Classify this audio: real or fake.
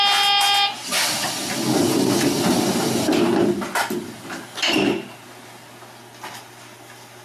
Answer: real